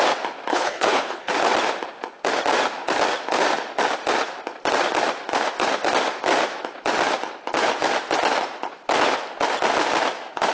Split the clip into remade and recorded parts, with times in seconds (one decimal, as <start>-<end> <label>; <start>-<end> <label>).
0.0-0.5 recorded; 0.5-1.3 remade; 1.3-10.5 recorded